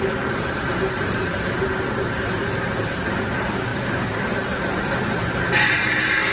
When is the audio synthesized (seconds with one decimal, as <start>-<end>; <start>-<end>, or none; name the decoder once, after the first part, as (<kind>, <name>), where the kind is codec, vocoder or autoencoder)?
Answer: 0.0-1.7 (vocoder, BigVGAN v2); 2.3-6.3